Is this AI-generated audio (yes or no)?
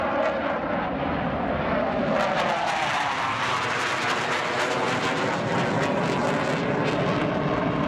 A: no